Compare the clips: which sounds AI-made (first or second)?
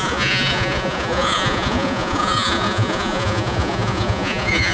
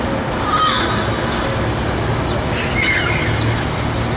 first